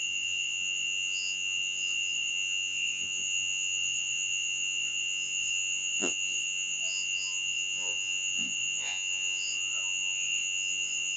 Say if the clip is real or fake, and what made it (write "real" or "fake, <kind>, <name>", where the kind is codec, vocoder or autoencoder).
fake, vocoder, Vocos